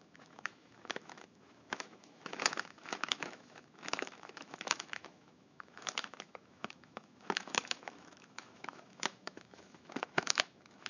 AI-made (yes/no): yes